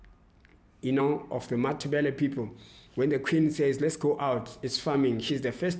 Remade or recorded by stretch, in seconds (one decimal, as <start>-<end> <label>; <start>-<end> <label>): 0.0-4.5 recorded; 4.5-5.3 remade; 5.3-5.8 recorded